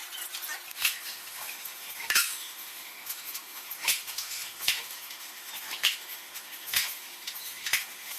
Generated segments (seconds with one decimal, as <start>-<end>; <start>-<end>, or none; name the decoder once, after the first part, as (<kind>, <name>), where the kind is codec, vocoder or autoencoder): 0.7-8.2 (autoencoder, DAC-VAE)